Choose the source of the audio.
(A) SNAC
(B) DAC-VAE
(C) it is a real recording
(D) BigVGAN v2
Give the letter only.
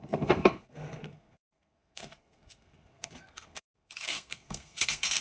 A